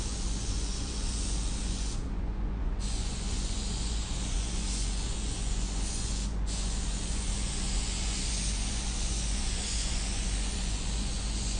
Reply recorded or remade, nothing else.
remade